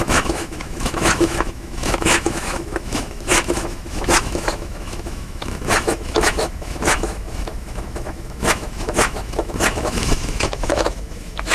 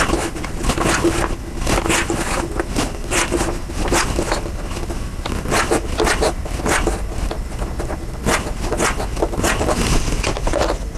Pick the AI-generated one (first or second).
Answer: first